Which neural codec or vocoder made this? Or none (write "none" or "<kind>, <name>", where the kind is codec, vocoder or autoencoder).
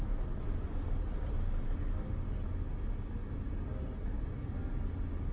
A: none